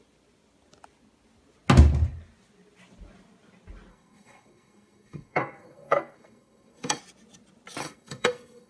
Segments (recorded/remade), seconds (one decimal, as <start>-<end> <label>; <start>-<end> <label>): 0.0-3.9 recorded; 3.9-7.0 remade; 7.0-7.8 recorded; 7.8-8.7 remade